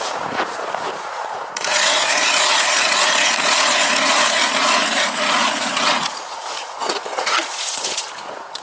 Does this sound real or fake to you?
fake